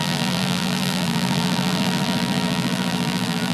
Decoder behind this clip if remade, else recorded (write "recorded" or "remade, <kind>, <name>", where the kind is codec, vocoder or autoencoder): remade, vocoder, BigVGAN v2